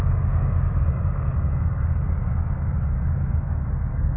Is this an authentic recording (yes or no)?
no